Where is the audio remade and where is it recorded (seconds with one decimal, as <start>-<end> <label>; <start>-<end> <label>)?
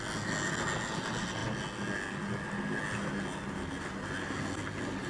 0.0-5.1 recorded